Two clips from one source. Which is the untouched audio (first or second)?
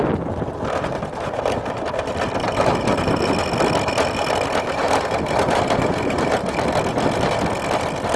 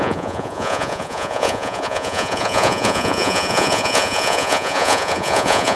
first